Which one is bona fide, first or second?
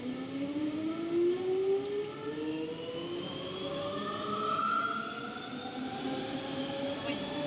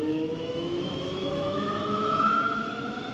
first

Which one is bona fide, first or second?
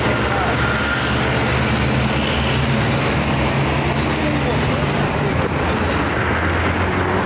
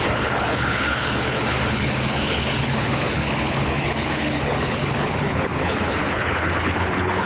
first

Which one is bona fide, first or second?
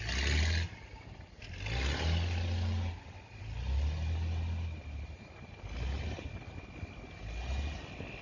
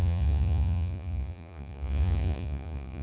first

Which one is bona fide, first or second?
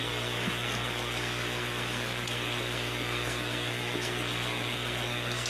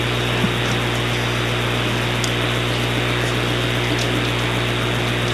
second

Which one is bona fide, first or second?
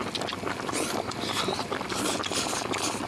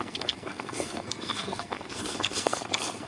first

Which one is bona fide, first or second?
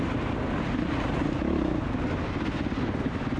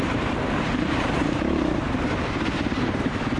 first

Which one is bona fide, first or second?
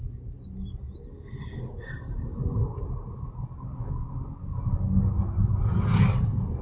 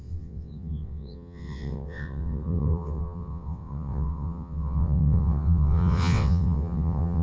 first